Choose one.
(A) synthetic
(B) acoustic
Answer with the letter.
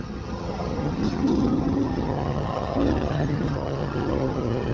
A